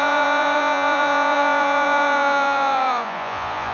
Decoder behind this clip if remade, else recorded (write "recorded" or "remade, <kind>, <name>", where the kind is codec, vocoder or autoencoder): remade, vocoder, Vocos